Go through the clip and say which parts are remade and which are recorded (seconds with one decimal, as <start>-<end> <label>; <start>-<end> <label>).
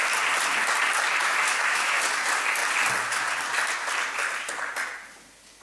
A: 0.0-1.2 recorded; 1.2-2.0 remade; 2.0-5.6 recorded